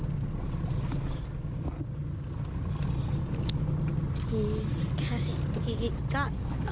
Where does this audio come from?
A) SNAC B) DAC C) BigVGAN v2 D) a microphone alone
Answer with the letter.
D